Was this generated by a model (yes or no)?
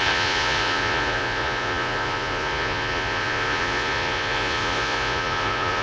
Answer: yes